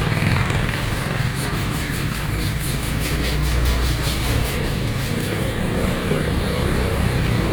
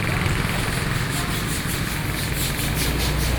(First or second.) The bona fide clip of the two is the second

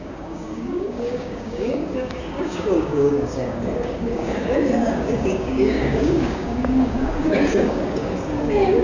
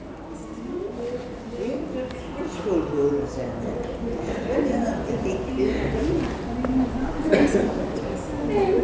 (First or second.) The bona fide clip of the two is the second